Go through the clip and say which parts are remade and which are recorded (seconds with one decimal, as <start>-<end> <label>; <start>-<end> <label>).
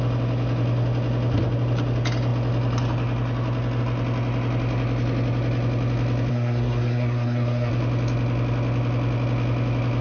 0.0-6.3 recorded; 6.3-7.7 remade; 7.7-10.0 recorded